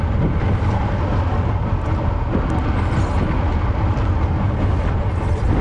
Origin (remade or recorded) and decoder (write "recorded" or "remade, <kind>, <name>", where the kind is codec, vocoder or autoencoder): recorded